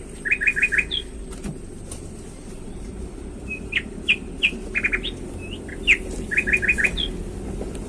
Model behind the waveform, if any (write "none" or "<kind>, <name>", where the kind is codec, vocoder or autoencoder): none